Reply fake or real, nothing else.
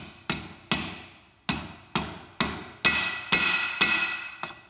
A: real